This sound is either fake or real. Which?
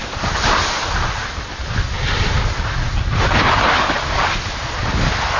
real